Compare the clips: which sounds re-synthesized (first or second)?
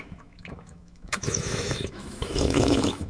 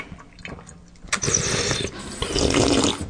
first